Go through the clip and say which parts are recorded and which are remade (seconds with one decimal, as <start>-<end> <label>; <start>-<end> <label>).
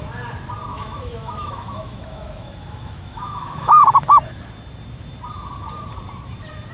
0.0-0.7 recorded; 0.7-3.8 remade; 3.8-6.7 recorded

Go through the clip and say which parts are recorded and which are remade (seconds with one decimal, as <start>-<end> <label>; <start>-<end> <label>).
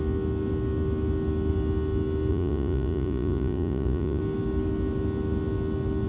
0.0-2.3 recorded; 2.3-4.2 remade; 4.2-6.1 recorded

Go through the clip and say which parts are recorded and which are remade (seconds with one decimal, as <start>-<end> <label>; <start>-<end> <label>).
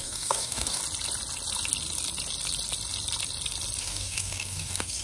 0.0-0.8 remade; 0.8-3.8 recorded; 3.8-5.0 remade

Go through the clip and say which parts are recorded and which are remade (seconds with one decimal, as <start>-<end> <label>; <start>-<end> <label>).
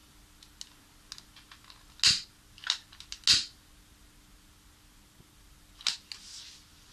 0.0-6.9 recorded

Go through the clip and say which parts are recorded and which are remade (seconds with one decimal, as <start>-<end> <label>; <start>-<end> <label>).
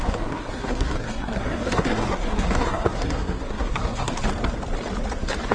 0.0-4.2 remade; 4.2-5.5 recorded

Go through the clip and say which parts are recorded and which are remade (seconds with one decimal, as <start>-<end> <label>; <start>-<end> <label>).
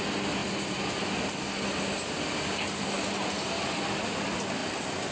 0.0-5.1 recorded